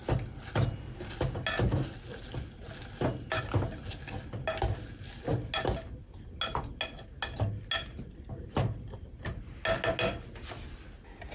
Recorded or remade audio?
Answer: recorded